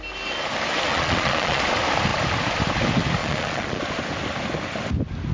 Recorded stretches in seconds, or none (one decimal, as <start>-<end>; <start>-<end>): 0.0-0.9; 1.6-3.2; 3.8-5.3